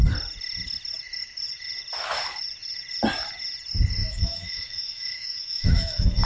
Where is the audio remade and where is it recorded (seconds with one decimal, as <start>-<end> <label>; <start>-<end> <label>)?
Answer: 0.0-4.0 recorded; 4.0-6.3 remade